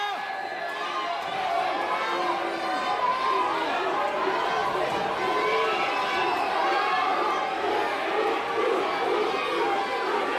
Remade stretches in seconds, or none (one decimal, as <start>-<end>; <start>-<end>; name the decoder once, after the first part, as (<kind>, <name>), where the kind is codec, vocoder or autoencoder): none